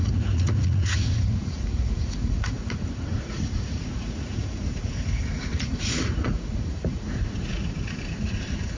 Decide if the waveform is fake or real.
fake